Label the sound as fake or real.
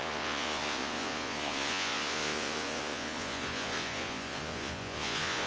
fake